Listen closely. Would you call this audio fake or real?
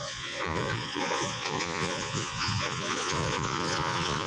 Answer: fake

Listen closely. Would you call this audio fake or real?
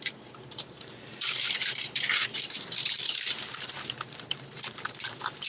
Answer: fake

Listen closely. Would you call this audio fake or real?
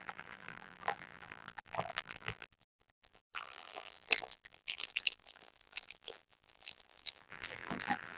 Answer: fake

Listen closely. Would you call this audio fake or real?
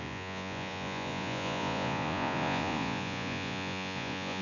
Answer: fake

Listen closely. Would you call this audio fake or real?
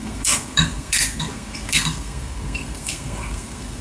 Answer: fake